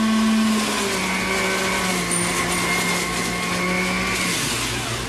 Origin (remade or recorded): recorded